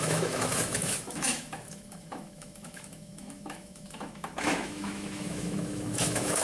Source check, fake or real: fake